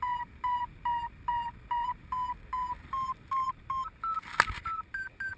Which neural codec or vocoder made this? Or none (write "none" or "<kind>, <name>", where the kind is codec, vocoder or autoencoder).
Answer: none